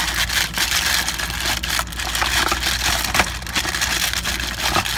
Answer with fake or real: real